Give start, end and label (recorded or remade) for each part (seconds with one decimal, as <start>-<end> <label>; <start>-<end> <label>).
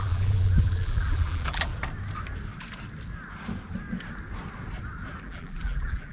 0.0-1.7 remade; 1.7-5.2 recorded; 5.2-6.1 remade